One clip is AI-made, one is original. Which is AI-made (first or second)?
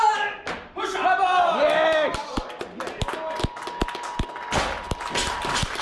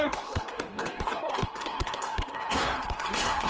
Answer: second